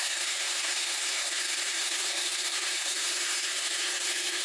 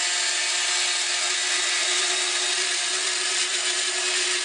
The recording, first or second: second